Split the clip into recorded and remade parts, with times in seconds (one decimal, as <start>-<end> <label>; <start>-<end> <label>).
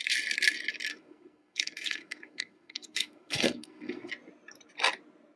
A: 0.0-0.9 recorded; 0.9-4.1 remade; 4.1-5.4 recorded